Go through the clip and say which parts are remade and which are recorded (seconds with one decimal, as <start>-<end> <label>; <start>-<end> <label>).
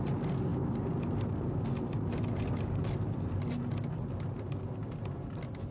0.0-5.7 recorded